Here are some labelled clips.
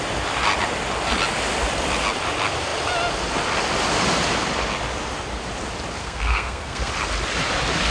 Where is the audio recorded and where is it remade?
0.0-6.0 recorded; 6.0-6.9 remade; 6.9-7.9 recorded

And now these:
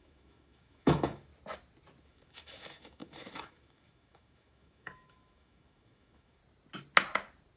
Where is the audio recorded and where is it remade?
0.0-1.3 remade; 1.3-2.0 recorded; 2.0-6.4 remade; 6.4-7.6 recorded

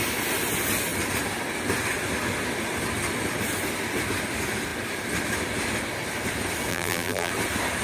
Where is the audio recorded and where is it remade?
0.0-6.7 recorded; 6.7-7.3 remade; 7.3-7.8 recorded

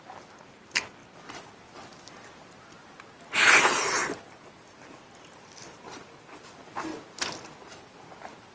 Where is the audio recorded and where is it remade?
0.0-8.5 recorded

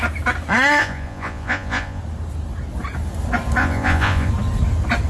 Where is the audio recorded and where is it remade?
0.0-0.8 recorded; 0.8-2.0 remade; 2.0-3.6 recorded; 3.6-4.3 remade; 4.3-5.1 recorded

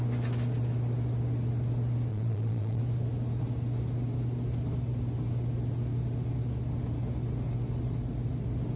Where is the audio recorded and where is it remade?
0.0-2.1 recorded; 2.1-2.8 remade; 2.8-8.8 recorded

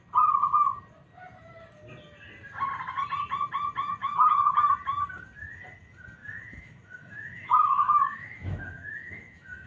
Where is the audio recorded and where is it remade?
0.0-4.0 recorded; 4.0-4.6 remade; 4.6-6.2 recorded; 6.2-9.7 remade

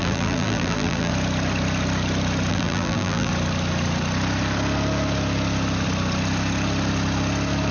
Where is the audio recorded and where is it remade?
0.0-1.1 remade; 1.1-2.5 recorded; 2.5-3.3 remade; 3.3-7.7 recorded